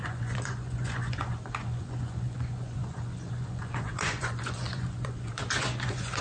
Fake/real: fake